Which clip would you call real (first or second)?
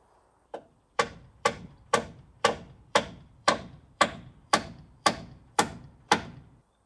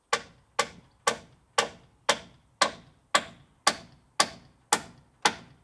second